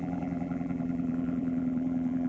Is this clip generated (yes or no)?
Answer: yes